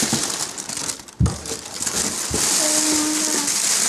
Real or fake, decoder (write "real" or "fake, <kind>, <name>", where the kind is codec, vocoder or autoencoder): real